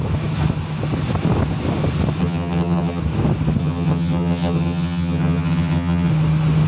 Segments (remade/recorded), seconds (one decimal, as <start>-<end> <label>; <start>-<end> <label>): 0.0-2.2 recorded; 2.2-3.0 remade; 3.0-3.6 recorded; 3.6-6.1 remade; 6.1-6.7 recorded

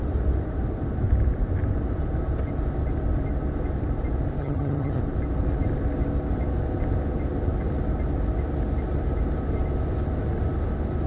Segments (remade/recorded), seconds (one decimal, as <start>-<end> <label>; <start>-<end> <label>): 0.0-4.4 recorded; 4.4-5.0 remade; 5.0-11.1 recorded

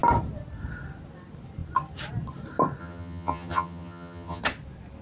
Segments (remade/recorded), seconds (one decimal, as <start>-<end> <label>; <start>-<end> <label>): 0.0-2.8 recorded; 2.8-4.4 remade; 4.4-5.0 recorded

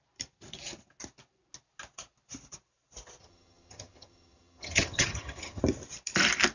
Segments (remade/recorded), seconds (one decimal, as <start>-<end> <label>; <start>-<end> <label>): 0.0-3.2 recorded; 3.2-5.6 remade; 5.6-6.5 recorded